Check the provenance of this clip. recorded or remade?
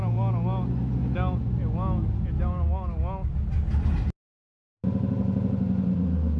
recorded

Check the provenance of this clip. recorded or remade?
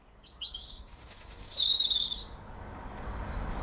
remade